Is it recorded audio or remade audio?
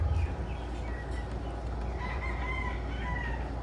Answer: recorded